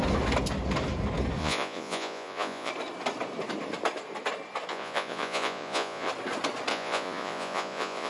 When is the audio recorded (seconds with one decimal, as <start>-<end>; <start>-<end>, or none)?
0.0-1.4; 2.7-4.7; 6.1-6.7